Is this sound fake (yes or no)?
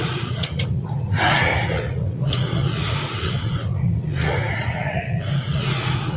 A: yes